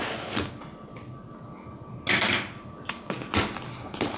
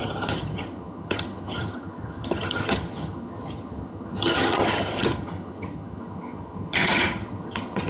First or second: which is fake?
second